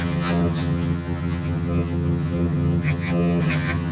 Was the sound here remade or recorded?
remade